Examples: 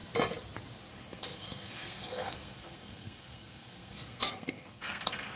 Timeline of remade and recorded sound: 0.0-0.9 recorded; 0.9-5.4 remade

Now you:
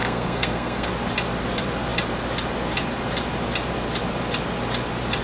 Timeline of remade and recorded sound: 0.0-0.9 remade; 0.9-5.2 recorded

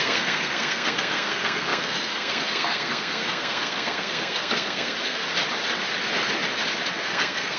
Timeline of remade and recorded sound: 0.0-5.2 remade; 5.2-6.9 recorded; 6.9-7.6 remade

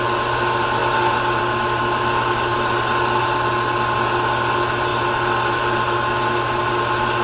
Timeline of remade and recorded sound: 0.0-7.2 recorded

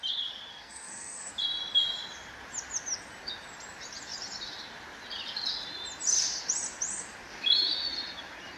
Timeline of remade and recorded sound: 0.0-0.5 recorded; 0.5-1.3 remade; 1.3-8.6 recorded

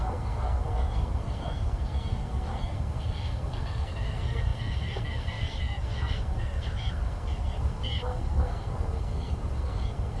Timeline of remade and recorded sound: 0.0-10.2 remade

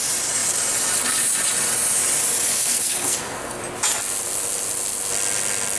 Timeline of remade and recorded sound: 0.0-2.5 recorded; 2.5-3.6 remade; 3.6-5.8 recorded